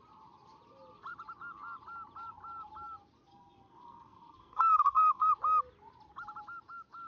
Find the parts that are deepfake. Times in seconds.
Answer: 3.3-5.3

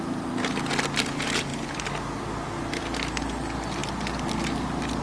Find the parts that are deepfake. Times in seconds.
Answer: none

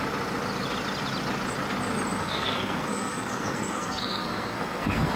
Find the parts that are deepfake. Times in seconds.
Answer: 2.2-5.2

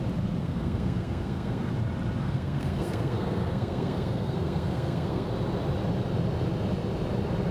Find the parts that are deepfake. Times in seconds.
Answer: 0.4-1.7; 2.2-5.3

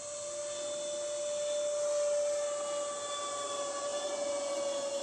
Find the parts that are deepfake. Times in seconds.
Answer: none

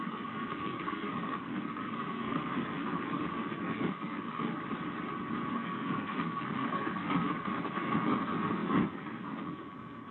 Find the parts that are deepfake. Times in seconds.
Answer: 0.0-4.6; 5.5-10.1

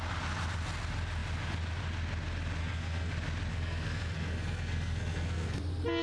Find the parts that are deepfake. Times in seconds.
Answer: 2.6-3.1; 3.5-5.6